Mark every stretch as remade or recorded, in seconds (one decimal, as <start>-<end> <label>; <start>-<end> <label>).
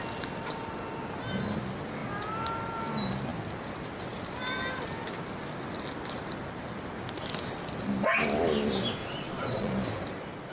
0.0-9.0 recorded; 9.0-9.7 remade; 9.7-10.5 recorded